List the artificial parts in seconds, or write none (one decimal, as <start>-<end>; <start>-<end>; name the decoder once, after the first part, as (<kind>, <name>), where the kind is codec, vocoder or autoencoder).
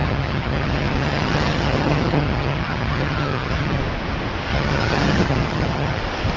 0.0-3.8 (vocoder, HiFi-GAN); 4.5-6.0